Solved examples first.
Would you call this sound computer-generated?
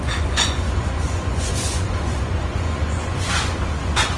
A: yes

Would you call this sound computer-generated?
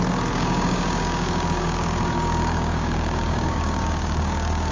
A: yes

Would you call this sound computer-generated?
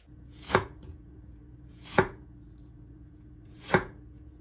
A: yes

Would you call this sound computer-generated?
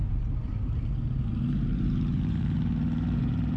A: yes